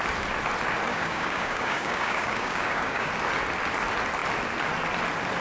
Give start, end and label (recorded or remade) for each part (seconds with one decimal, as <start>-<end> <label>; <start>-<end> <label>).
0.0-0.9 recorded; 0.9-3.1 remade; 3.1-5.4 recorded